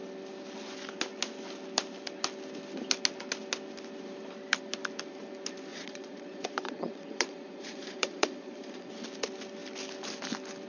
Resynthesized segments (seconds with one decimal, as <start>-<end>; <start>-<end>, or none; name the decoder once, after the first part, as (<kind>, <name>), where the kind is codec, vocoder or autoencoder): 5.7-8.9 (vocoder, Vocos)

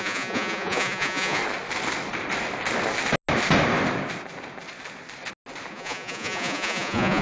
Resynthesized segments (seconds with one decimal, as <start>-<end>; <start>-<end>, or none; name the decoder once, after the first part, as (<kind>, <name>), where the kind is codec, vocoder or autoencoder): 0.0-1.4 (vocoder, Vocos); 5.7-7.2